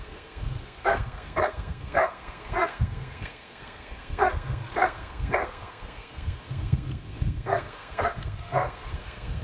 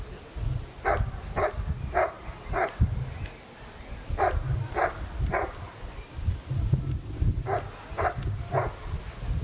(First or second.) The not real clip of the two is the first